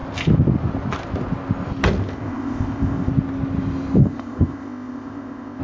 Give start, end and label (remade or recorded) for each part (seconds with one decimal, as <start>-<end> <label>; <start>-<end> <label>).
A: 0.0-2.0 recorded; 2.0-3.1 remade; 3.1-4.0 recorded; 4.0-5.6 remade